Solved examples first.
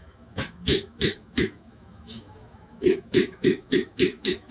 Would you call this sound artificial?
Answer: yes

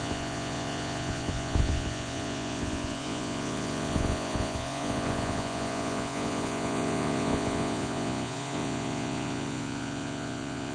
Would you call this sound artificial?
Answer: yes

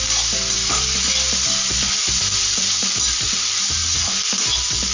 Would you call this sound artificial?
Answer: no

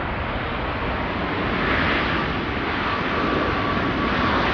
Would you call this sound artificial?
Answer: no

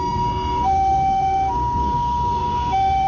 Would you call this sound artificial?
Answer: yes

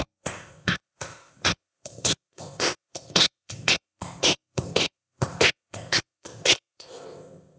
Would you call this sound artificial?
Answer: yes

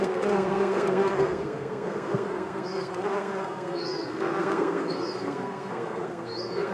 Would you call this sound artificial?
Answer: yes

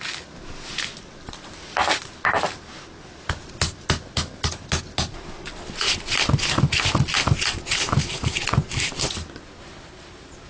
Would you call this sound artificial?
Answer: no